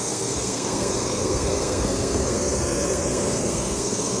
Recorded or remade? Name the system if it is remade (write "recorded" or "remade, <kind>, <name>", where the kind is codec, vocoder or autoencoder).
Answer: remade, codec, SNAC